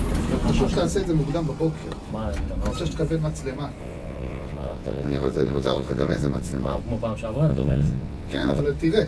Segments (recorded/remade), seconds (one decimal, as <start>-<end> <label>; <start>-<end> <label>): 0.0-3.8 recorded; 3.8-6.8 remade; 6.8-7.5 recorded; 7.5-8.6 remade; 8.6-9.1 recorded